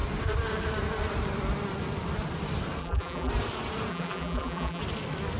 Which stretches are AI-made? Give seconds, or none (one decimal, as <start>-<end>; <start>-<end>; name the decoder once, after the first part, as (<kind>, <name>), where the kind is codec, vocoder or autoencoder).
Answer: 2.8-3.3 (vocoder, BigVGAN v2); 3.9-4.8